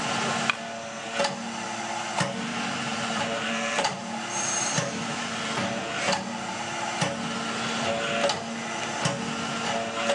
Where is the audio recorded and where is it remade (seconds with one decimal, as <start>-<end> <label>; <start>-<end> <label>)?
0.0-2.5 recorded; 2.5-5.5 remade; 5.5-10.1 recorded